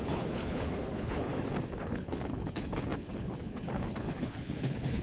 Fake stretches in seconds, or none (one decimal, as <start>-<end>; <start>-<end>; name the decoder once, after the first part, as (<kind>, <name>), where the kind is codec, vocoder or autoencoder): 0.0-1.3 (codec, HILCodec); 1.8-5.0